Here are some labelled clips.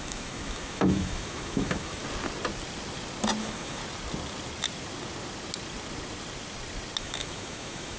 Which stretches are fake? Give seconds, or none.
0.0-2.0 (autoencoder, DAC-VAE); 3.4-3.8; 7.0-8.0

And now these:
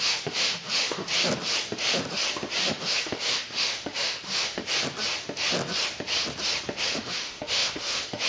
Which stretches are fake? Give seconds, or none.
0.0-1.0 (autoencoder, DAC-VAE); 2.7-4.6; 6.9-8.3